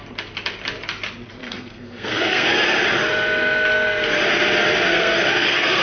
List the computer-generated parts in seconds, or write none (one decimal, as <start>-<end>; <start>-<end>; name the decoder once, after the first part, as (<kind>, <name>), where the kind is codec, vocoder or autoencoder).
1.4-2.5 (codec, SNAC); 4.9-5.8